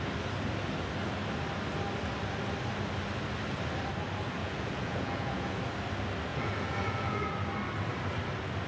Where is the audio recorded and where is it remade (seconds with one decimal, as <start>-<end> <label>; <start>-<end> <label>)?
0.0-4.4 recorded; 4.4-5.6 remade; 5.6-6.3 recorded; 6.3-7.2 remade; 7.2-8.7 recorded